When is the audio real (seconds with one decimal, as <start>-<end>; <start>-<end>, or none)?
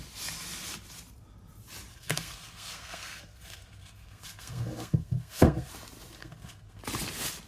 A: 0.0-1.9; 5.7-6.2; 6.8-7.5